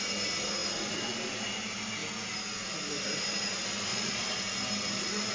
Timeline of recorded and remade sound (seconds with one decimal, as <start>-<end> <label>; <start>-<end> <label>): 0.0-3.9 recorded; 3.9-4.4 remade; 4.4-5.3 recorded